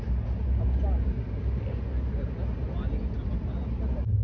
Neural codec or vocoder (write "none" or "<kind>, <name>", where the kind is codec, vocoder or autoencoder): none